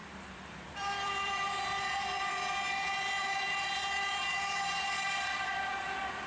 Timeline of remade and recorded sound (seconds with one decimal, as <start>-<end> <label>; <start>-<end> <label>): 0.0-6.3 remade